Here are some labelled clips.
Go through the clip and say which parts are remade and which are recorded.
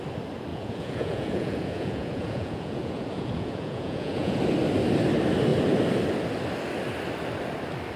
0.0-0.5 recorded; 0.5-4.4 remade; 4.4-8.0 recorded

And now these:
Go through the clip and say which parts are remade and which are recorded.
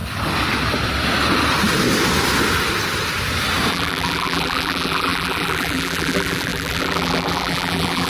0.0-3.7 recorded; 3.7-8.1 remade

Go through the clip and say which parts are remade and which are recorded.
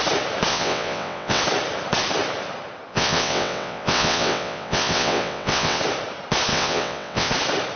0.0-0.5 recorded; 0.5-1.4 remade; 1.4-2.9 recorded; 2.9-5.8 remade; 5.8-6.5 recorded; 6.5-7.3 remade; 7.3-7.8 recorded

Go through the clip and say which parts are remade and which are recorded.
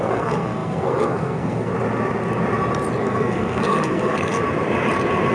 0.0-1.7 remade; 1.7-3.0 recorded; 3.0-4.4 remade; 4.4-5.3 recorded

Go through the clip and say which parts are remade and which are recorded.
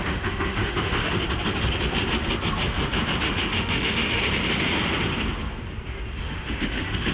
0.0-1.0 remade; 1.0-3.2 recorded; 3.2-4.2 remade; 4.2-6.2 recorded; 6.2-7.1 remade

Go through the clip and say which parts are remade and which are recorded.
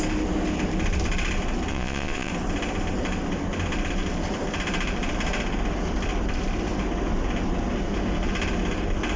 0.0-1.7 recorded; 1.7-2.3 remade; 2.3-9.2 recorded